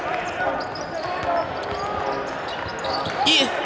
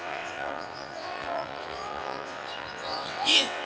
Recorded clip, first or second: first